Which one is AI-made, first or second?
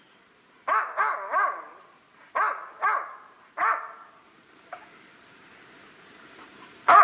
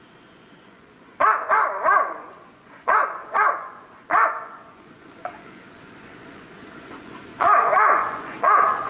second